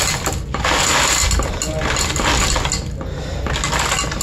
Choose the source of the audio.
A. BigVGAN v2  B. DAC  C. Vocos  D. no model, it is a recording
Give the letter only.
D